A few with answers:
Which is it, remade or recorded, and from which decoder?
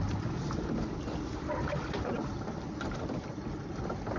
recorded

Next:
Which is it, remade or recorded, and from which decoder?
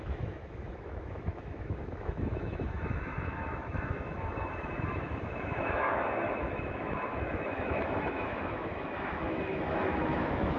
remade, autoencoder, DAC-VAE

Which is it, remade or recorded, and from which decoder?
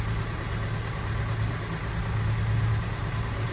recorded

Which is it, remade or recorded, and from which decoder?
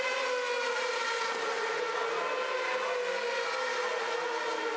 recorded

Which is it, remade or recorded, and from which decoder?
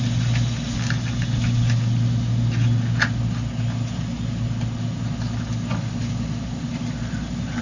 recorded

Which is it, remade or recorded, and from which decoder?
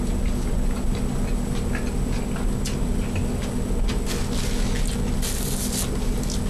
recorded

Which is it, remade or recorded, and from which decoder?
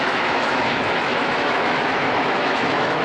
remade, autoencoder, DAC-VAE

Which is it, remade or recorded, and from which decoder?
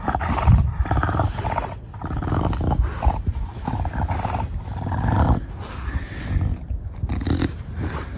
recorded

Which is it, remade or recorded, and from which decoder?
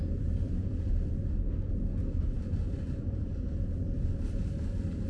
recorded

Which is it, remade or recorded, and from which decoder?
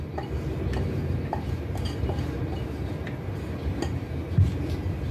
recorded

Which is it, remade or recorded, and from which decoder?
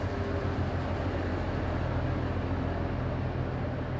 recorded